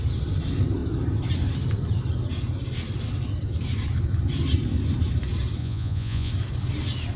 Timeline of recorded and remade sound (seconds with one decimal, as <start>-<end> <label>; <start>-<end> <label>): 0.0-5.6 recorded; 5.6-6.3 remade; 6.3-7.2 recorded